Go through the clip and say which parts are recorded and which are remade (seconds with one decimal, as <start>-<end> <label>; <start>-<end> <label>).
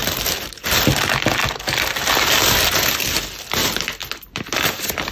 0.0-5.1 recorded